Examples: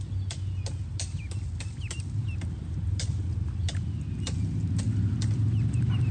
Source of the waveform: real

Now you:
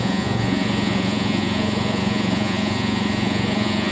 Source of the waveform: fake